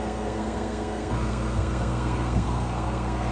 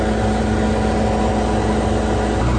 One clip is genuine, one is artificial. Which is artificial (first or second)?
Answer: first